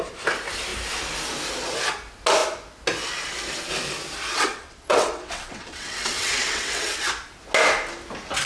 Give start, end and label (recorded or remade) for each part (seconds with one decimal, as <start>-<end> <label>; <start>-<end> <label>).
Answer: 0.0-4.3 recorded; 4.3-7.1 remade; 7.1-8.5 recorded

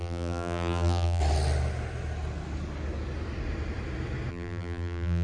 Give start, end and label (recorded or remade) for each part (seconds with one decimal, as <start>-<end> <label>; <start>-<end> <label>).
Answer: 0.0-1.2 remade; 1.2-4.3 recorded; 4.3-5.2 remade

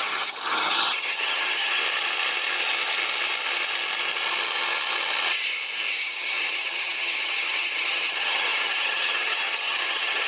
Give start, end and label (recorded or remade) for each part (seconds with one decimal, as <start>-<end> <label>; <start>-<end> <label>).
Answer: 0.0-1.8 remade; 1.8-5.9 recorded; 5.9-10.3 remade

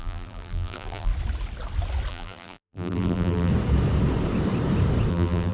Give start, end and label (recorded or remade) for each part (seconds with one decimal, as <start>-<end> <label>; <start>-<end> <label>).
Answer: 0.0-1.1 remade; 1.1-2.1 recorded; 2.1-3.5 remade; 3.5-5.1 recorded; 5.1-5.5 remade

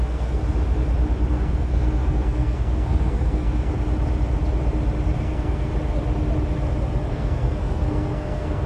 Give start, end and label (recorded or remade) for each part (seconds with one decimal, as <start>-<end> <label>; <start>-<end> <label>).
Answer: 0.0-0.4 remade; 0.4-1.3 recorded; 1.3-3.7 remade; 3.7-5.2 recorded; 5.2-5.7 remade; 5.7-7.1 recorded; 7.1-8.7 remade

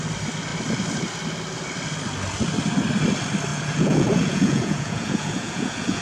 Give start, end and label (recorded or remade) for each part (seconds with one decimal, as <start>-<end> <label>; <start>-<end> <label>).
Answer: 0.0-3.5 recorded; 3.5-6.0 remade